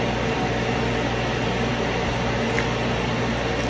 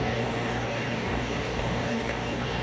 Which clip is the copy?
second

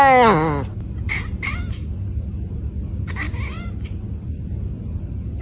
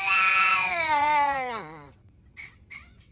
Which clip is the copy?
second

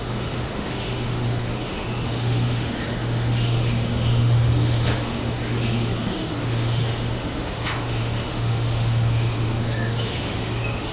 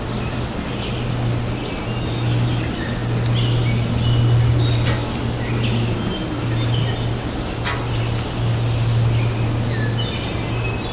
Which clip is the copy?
first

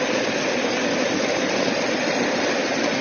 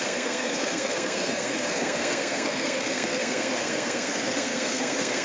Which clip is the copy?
second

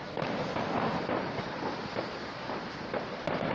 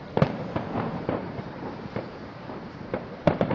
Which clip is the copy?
second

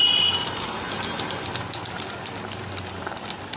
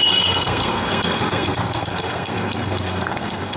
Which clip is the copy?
second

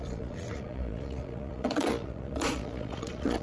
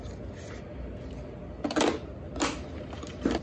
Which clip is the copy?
first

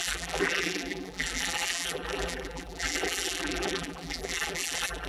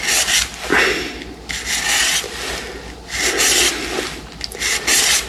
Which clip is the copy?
first